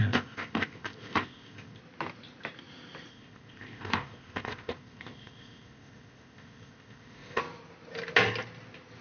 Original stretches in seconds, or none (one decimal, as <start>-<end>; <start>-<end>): 1.8-3.1; 7.4-9.0